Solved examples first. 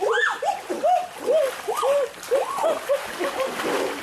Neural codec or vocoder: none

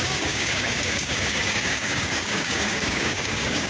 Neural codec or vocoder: codec, DAC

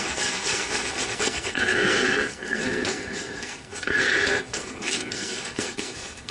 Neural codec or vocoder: codec, SNAC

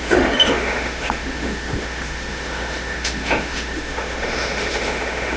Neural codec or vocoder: autoencoder, DAC-VAE